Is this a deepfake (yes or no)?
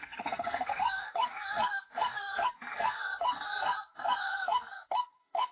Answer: yes